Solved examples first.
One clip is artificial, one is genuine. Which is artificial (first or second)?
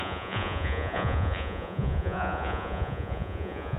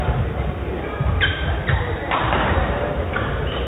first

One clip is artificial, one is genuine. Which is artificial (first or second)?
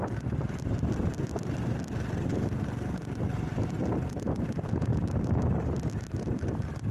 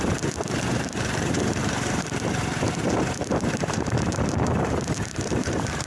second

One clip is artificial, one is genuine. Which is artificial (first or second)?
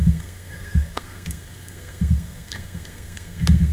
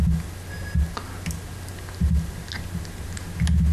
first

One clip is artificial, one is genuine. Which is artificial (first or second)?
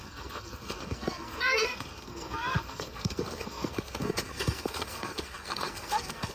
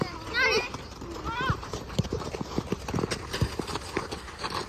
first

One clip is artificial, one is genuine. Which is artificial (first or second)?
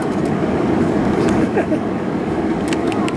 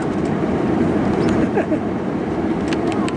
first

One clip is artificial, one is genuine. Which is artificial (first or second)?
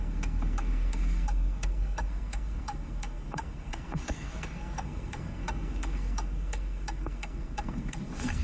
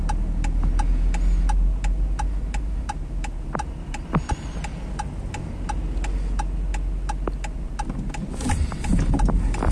first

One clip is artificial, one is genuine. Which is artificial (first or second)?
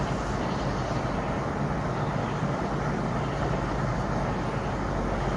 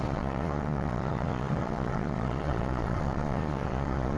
second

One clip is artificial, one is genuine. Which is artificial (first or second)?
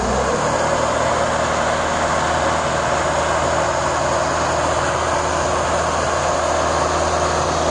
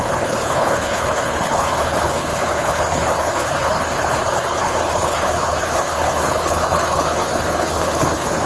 second